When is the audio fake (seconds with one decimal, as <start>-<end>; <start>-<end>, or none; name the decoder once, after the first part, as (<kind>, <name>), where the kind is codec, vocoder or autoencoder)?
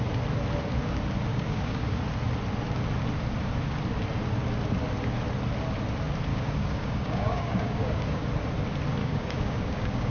1.3-2.0 (codec, DAC); 6.3-8.2; 9.0-10.1